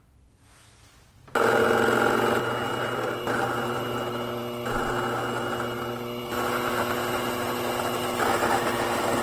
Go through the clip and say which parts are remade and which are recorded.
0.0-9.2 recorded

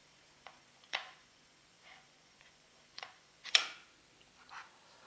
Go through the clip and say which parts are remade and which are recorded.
0.0-3.6 remade; 3.6-5.1 recorded

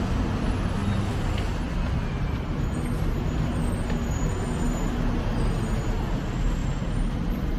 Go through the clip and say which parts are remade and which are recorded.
0.0-7.6 recorded

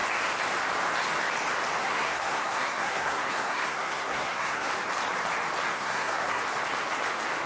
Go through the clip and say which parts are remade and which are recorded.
0.0-1.8 recorded; 1.8-4.7 remade; 4.7-5.7 recorded; 5.7-6.4 remade; 6.4-7.5 recorded

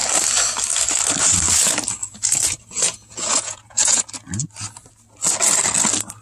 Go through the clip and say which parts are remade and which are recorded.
0.0-2.0 recorded; 2.0-4.0 remade; 4.0-6.2 recorded

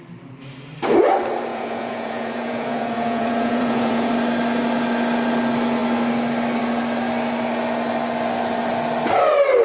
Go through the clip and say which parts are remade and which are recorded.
0.0-1.5 recorded; 1.5-4.1 remade; 4.1-9.6 recorded

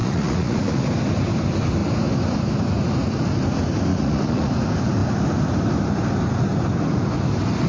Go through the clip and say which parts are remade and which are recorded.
0.0-0.9 remade; 0.9-3.9 recorded; 3.9-4.5 remade; 4.5-7.7 recorded